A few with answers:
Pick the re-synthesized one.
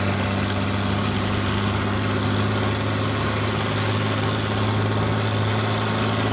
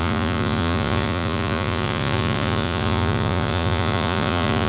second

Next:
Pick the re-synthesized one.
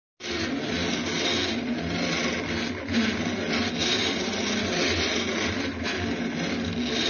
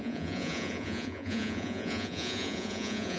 second